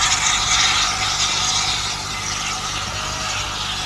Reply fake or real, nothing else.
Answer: real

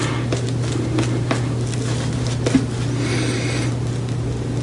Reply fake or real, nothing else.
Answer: real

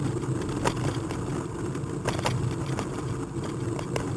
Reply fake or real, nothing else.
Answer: real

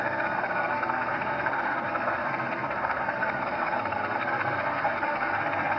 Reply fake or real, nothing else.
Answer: fake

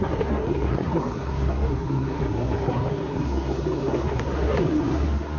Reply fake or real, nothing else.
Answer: fake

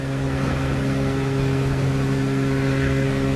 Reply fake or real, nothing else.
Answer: fake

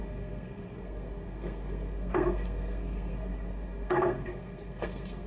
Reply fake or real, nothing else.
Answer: fake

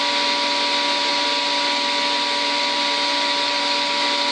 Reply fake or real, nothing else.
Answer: real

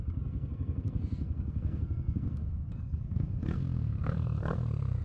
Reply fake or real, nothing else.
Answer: fake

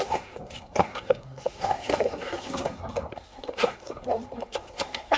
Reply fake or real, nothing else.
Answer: fake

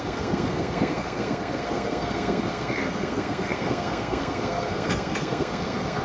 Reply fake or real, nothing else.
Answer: fake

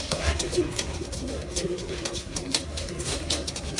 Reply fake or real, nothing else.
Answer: fake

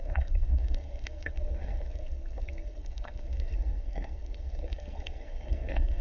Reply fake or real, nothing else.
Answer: fake